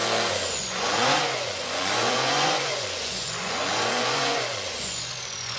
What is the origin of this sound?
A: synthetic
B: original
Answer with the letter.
A